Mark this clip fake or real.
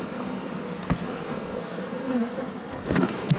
fake